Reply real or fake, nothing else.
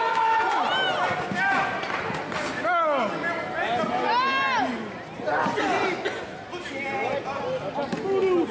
real